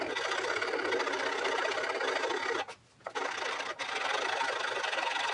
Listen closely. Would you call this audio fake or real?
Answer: real